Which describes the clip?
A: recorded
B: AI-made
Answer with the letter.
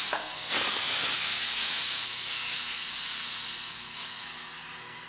B